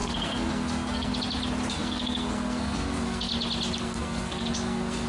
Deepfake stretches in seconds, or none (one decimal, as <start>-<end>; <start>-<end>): 0.0-1.1; 1.7-3.3; 3.8-5.1